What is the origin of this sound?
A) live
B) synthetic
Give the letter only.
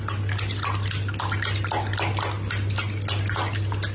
A